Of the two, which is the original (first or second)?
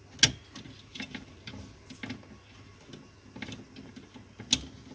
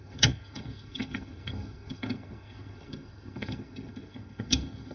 first